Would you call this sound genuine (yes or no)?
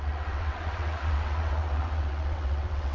no